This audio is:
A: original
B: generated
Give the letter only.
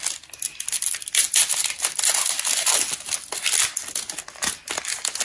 A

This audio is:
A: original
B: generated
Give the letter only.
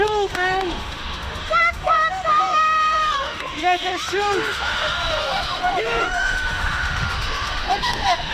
B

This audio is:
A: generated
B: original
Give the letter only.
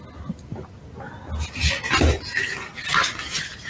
B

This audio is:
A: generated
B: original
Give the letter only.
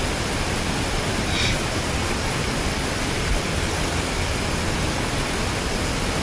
B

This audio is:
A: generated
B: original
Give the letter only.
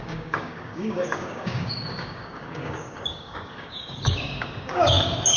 A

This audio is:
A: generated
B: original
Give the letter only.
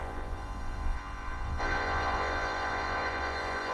A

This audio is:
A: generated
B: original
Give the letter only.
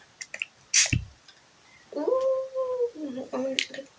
B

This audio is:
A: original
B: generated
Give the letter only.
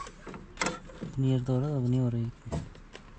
A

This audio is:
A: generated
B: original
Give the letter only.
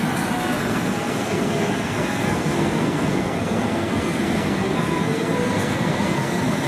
A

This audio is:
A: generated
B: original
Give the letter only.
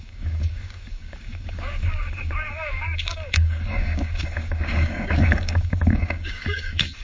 A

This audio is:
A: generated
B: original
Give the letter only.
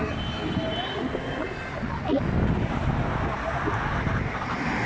B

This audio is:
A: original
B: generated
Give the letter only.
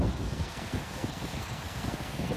B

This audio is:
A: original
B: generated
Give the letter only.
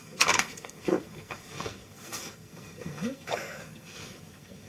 B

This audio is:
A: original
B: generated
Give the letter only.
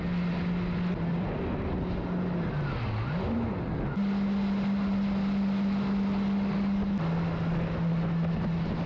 A